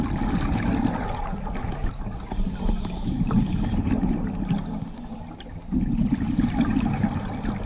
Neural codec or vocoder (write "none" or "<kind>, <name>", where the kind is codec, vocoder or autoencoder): none